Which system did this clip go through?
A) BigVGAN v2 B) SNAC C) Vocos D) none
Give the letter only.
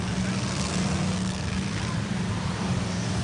D